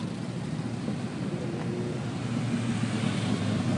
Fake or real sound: real